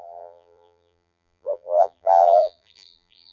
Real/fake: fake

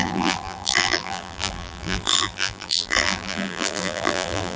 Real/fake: fake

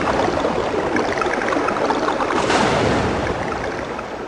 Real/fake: fake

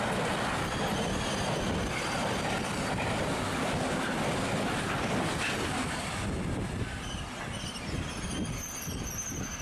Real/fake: real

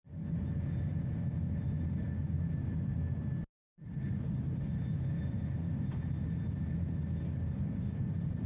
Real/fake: real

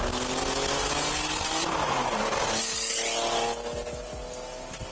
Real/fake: real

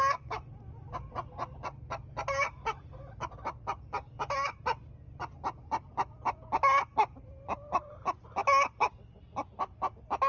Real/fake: real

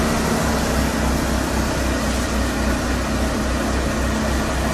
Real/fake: real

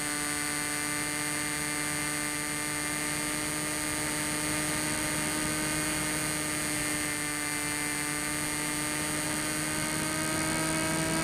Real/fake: real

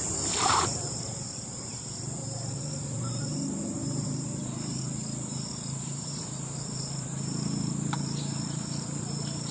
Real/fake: fake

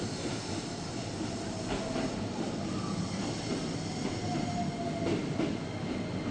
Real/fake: real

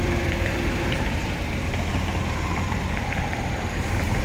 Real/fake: fake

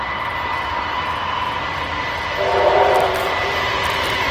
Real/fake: real